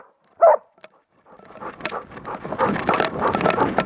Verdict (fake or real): real